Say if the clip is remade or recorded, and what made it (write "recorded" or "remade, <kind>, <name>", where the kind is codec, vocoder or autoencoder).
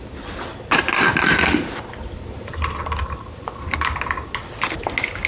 recorded